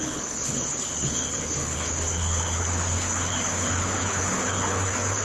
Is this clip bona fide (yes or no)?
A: no